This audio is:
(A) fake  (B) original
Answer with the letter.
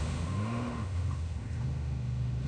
A